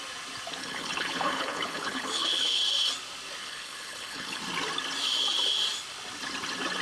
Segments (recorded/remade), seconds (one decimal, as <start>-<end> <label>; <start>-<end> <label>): 0.0-0.6 recorded; 0.6-2.6 remade; 2.6-3.4 recorded; 3.4-4.4 remade; 4.4-6.8 recorded